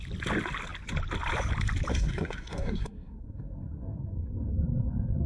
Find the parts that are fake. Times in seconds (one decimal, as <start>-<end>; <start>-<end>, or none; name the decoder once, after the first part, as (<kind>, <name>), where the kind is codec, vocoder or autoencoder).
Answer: 1.9-5.3 (codec, SNAC)